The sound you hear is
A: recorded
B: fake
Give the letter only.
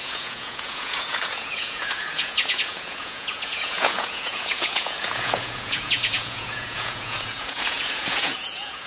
B